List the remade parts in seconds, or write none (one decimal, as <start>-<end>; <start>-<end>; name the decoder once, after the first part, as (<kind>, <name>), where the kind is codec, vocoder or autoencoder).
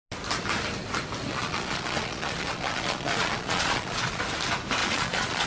1.3-4.2 (vocoder, Vocos); 4.8-5.5